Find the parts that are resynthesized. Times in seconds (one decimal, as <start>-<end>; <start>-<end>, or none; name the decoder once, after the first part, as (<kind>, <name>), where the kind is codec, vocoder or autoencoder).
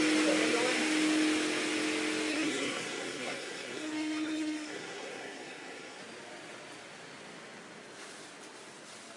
2.3-6.0 (codec, SNAC)